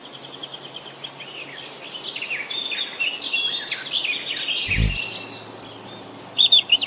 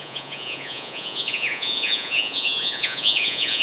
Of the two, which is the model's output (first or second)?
second